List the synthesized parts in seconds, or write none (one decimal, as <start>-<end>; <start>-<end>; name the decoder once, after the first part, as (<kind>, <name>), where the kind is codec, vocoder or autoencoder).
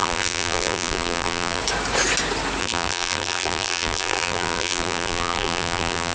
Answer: 0.0-1.6 (vocoder, BigVGAN v2); 2.6-6.1